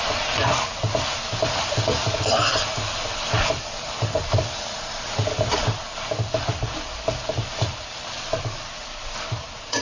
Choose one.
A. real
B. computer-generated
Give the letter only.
A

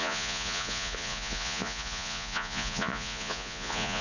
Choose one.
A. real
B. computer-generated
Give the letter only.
B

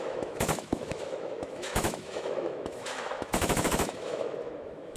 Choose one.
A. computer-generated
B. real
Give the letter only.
A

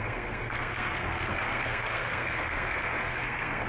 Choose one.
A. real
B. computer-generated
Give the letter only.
B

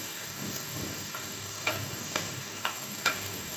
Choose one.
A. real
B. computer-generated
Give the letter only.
B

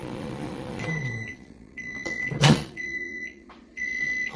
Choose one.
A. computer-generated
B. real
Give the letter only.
A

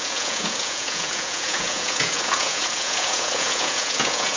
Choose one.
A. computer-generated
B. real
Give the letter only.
A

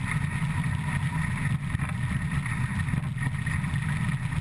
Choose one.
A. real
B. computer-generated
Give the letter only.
A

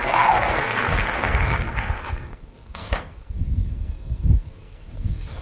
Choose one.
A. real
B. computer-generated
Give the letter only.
B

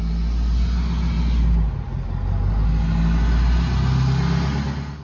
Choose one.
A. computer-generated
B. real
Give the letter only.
B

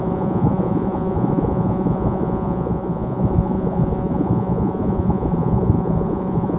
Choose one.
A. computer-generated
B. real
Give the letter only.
A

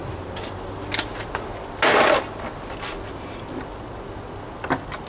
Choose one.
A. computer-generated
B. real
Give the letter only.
B